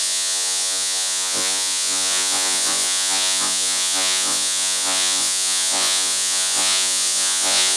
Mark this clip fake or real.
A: fake